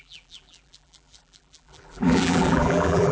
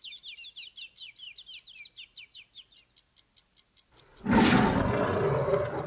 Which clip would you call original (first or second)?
second